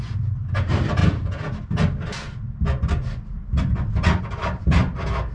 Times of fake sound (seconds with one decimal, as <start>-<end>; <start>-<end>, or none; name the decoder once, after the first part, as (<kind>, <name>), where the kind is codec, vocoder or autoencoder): 0.0-1.0 (vocoder, BigVGAN v2); 4.2-4.8